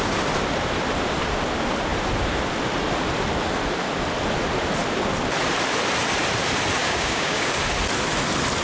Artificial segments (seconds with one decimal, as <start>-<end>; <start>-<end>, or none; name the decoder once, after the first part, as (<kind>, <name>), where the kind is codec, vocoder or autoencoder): 6.8-7.5 (codec, DAC)